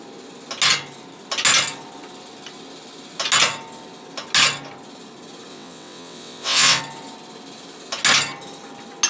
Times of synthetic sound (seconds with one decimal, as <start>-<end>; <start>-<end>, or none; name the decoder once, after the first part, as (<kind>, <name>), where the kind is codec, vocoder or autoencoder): 5.5-6.8 (vocoder, WaveNeXt)